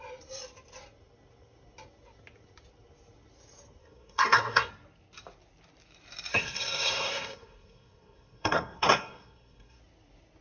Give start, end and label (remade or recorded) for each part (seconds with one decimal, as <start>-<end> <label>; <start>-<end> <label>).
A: 0.0-3.8 recorded; 3.8-4.7 remade; 4.7-6.3 recorded; 6.3-9.8 remade; 9.8-10.4 recorded